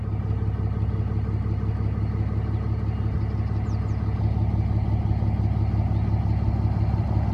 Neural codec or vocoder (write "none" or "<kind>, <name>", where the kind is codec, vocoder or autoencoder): none